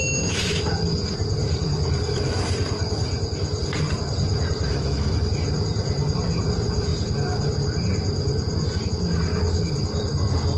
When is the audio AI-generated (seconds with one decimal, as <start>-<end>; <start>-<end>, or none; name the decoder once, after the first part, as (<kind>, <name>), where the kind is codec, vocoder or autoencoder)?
4.7-5.3 (autoencoder, DAC-VAE)